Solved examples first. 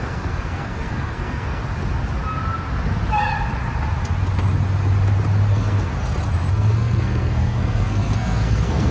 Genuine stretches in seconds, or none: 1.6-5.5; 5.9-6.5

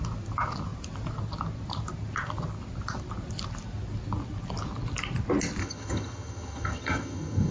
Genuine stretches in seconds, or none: 0.0-5.6

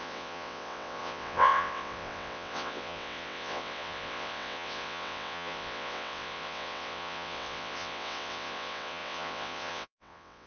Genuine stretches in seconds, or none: none

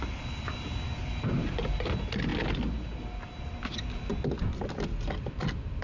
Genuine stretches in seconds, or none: 2.3-3.4; 4.1-5.8

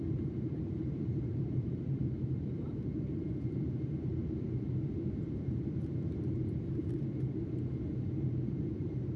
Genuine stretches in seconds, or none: none

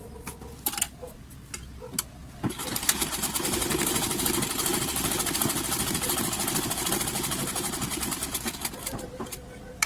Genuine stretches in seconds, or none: 0.0-9.9

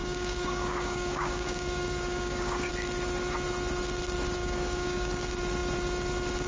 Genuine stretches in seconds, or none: 2.7-4.4; 5.1-6.5